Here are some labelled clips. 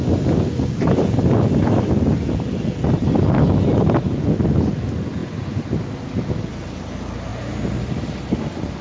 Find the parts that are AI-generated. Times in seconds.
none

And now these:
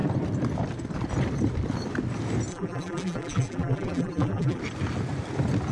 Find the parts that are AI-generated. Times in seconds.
2.5-4.6 (vocoder, BigVGAN v2)

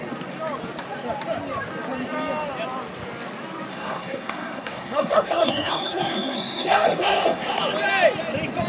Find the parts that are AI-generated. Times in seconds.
3.7-7.6 (codec, SNAC)

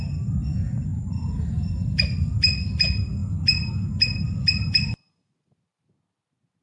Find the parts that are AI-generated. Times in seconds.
0.9-1.9 (vocoder, BigVGAN v2)

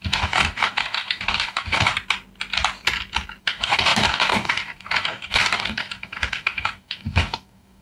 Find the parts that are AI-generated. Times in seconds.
0.0-1.9 (codec, DAC); 3.4-7.8